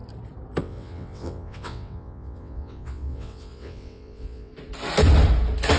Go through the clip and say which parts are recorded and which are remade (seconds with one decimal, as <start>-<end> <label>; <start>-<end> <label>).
0.0-0.6 recorded; 0.6-4.5 remade; 4.5-5.8 recorded